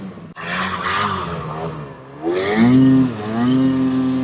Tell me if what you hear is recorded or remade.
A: recorded